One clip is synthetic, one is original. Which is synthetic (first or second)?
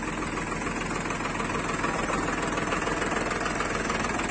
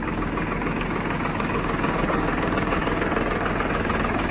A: second